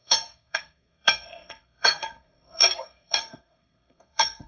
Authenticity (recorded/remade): remade